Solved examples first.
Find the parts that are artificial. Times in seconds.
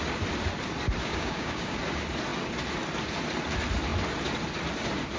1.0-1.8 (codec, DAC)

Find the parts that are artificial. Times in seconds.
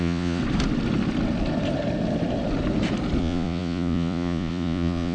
0.0-0.4 (vocoder, Vocos); 3.2-5.1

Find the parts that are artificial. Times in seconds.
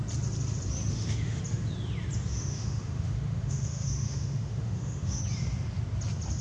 0.9-1.4 (autoencoder, DAC-VAE); 2.3-5.2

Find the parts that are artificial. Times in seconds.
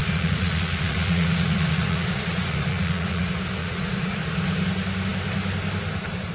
0.0-3.2 (vocoder, Vocos); 3.6-4.2